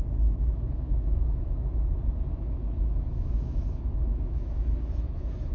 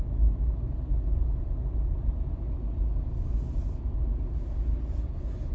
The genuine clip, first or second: second